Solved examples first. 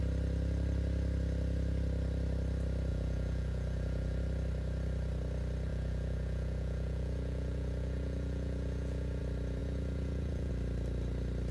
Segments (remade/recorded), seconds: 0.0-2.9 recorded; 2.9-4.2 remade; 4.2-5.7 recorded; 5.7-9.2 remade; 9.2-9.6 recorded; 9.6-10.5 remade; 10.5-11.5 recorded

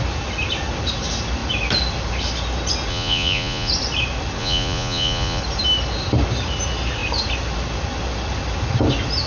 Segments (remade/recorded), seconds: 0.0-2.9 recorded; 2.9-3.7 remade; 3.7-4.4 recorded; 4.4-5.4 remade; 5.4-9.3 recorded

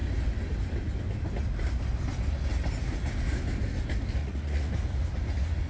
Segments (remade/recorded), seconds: 0.0-4.2 recorded; 4.2-4.7 remade; 4.7-5.7 recorded

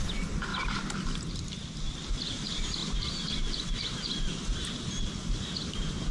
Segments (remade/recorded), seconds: 0.0-6.1 recorded